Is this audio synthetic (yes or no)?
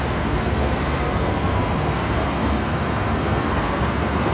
yes